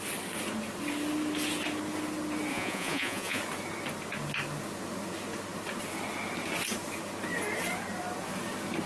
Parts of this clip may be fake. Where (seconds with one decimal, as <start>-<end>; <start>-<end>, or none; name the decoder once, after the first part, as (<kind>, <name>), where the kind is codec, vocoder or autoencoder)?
2.5-3.4 (vocoder, Vocos)